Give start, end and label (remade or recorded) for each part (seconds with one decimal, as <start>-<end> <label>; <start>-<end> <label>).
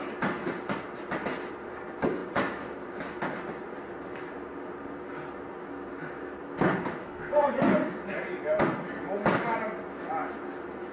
0.0-7.0 recorded; 7.0-7.7 remade; 7.7-10.9 recorded